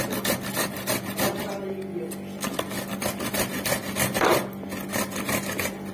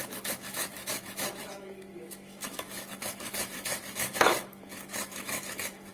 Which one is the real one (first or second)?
first